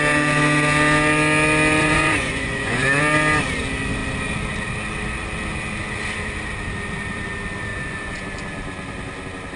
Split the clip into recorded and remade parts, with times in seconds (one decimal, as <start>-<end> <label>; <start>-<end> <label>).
0.0-1.8 recorded; 1.8-3.0 remade; 3.0-7.7 recorded; 7.7-8.2 remade; 8.2-9.6 recorded